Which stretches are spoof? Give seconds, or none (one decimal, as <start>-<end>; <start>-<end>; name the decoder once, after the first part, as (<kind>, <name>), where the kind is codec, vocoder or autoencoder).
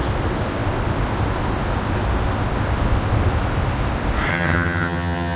4.3-5.4 (vocoder, HiFi-GAN)